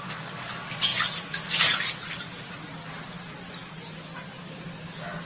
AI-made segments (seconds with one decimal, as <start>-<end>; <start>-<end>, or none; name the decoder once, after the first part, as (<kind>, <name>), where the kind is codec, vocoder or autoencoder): none